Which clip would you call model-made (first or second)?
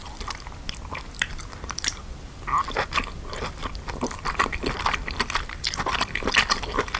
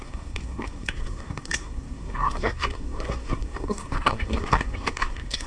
second